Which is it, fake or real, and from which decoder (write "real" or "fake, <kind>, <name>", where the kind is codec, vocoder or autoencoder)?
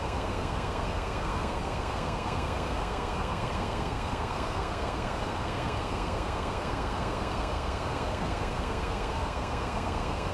fake, codec, SNAC